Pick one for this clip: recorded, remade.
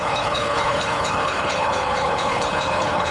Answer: remade